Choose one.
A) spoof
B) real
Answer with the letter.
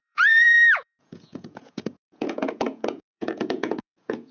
A